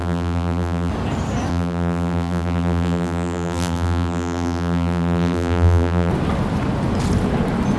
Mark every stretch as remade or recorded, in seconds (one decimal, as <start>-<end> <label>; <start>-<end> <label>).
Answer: 0.0-0.9 remade; 0.9-1.5 recorded; 1.5-6.1 remade; 6.1-7.8 recorded